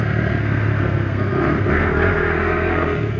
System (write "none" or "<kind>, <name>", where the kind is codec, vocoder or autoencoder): codec, SNAC